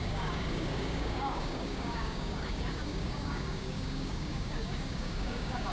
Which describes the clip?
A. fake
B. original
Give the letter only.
A